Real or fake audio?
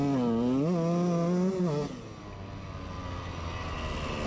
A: real